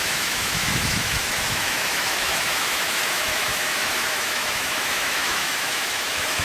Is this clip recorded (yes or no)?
no